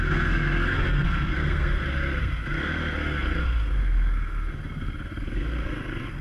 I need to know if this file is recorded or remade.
remade